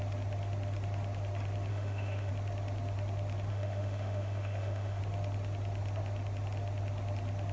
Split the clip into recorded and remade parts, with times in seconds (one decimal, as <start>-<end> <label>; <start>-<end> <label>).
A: 0.0-1.7 recorded; 1.7-2.3 remade; 2.3-3.5 recorded; 3.5-5.0 remade; 5.0-7.5 recorded